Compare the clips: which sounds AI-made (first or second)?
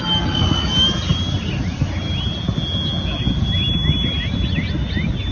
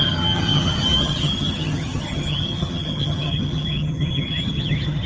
second